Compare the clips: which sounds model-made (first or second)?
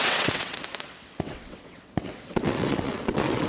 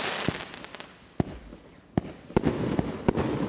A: first